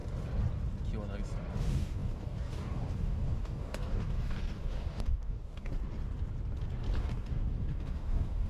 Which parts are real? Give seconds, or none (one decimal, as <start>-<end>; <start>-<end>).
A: 0.0-1.6; 5.7-7.0